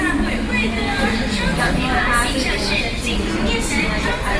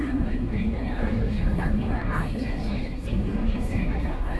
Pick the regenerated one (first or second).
second